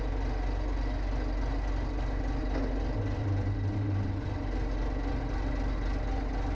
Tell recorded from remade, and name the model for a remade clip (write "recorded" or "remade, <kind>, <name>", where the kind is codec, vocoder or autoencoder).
recorded